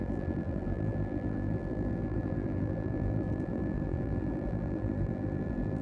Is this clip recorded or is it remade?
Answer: remade